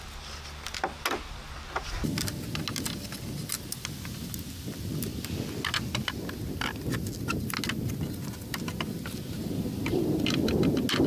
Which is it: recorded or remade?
recorded